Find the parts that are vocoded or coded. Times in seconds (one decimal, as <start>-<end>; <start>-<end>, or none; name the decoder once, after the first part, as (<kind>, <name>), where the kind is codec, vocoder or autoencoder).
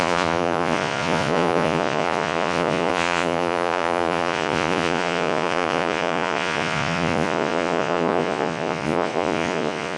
0.0-10.0 (vocoder, Vocos)